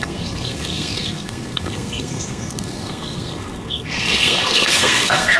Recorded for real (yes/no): no